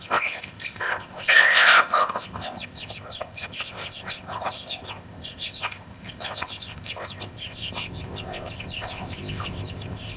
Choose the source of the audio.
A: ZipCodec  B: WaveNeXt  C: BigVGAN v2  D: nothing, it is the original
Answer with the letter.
A